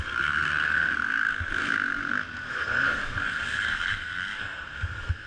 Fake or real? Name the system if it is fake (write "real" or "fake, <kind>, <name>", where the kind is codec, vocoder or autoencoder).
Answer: fake, codec, SNAC